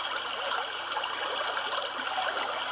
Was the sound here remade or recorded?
recorded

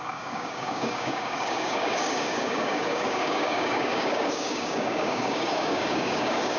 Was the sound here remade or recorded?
remade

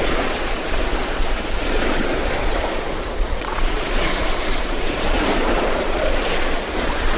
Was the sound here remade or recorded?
remade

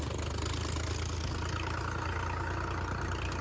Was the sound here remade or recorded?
recorded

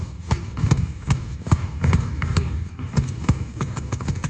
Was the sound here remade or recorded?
remade